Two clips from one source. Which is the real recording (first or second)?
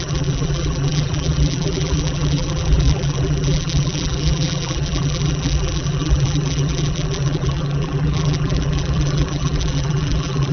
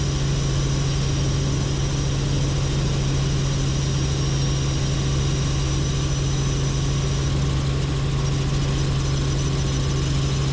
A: second